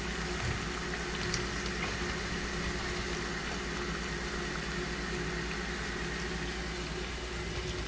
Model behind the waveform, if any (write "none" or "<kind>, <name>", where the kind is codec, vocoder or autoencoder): none